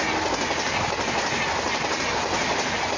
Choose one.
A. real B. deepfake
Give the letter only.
A